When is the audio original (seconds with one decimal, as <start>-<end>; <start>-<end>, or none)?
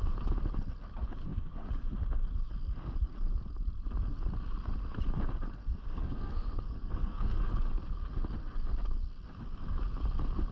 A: 0.0-5.6; 7.5-10.5